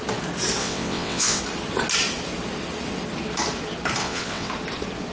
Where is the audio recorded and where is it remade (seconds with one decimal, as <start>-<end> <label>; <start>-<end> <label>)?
0.0-0.6 recorded; 0.6-1.4 remade; 1.4-4.0 recorded; 4.0-4.5 remade; 4.5-5.1 recorded